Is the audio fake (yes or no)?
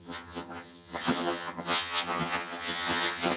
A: yes